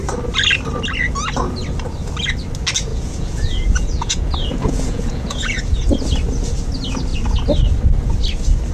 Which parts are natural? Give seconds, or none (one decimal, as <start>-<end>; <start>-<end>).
0.0-2.9; 5.9-8.7